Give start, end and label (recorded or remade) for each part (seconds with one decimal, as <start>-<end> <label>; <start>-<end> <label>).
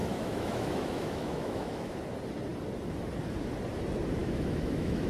0.0-2.0 remade; 2.0-4.2 recorded; 4.2-5.1 remade